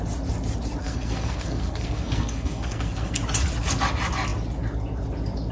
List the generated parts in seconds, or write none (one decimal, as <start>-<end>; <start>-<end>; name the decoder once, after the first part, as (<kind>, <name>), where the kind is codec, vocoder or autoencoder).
0.8-3.2 (codec, SNAC)